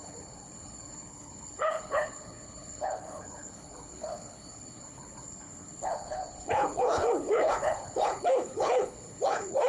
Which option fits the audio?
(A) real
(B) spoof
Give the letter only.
B